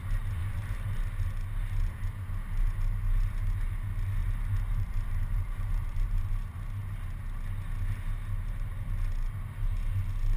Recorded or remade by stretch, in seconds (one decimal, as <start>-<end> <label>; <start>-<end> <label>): 0.0-0.4 recorded; 0.4-1.0 remade; 1.0-4.2 recorded; 4.2-6.3 remade; 6.3-10.4 recorded